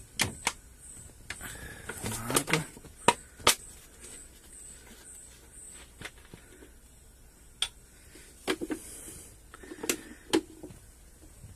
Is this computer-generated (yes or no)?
no